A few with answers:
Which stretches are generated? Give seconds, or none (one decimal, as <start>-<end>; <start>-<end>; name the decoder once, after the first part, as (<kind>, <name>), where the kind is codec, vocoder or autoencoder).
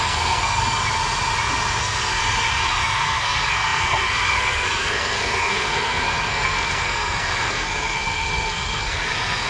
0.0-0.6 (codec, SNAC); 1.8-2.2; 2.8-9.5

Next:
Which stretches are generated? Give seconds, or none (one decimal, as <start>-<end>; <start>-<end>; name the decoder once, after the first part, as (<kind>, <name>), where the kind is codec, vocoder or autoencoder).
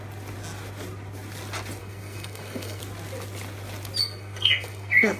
1.8-2.8 (codec, SNAC); 4.0-5.2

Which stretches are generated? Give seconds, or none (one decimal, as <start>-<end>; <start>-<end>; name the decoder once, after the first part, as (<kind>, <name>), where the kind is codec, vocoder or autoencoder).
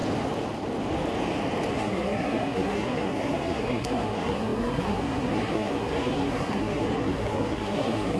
1.7-8.2 (codec, SNAC)